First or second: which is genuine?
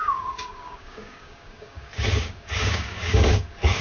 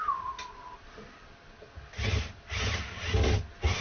second